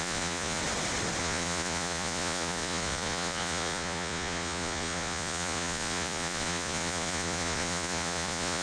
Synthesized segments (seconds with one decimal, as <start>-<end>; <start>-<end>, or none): 0.0-0.6; 1.2-8.6